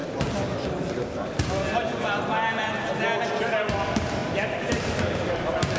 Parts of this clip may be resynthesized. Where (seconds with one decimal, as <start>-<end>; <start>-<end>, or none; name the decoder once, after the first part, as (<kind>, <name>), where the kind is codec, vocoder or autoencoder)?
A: none